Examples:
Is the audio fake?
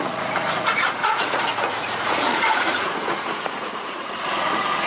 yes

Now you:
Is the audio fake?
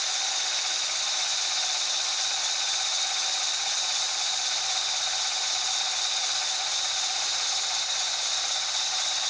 no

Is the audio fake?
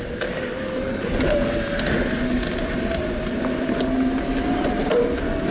no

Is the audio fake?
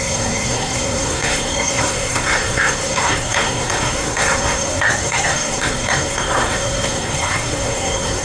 yes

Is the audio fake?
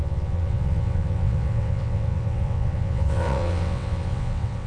yes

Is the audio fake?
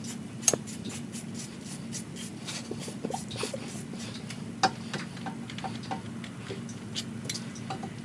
no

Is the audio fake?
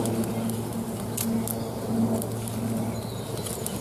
no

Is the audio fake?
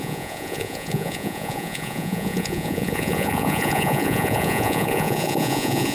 yes